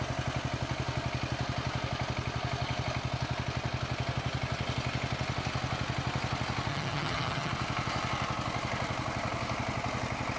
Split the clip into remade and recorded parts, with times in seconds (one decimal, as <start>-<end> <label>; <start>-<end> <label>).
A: 0.0-6.7 recorded; 6.7-7.5 remade; 7.5-10.4 recorded